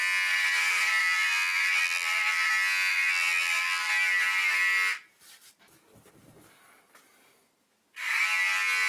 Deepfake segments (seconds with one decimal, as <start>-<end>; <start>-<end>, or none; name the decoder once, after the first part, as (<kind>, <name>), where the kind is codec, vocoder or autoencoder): 1.0-2.5 (vocoder, BigVGAN v2); 2.9-3.9